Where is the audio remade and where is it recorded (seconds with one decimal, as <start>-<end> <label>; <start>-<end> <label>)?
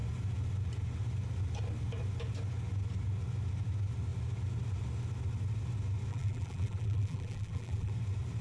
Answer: 0.0-6.1 recorded; 6.1-7.9 remade; 7.9-8.4 recorded